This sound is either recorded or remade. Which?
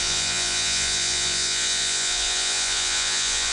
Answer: remade